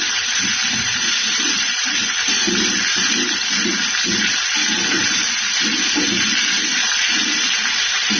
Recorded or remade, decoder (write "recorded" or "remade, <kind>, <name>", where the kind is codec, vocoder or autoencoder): recorded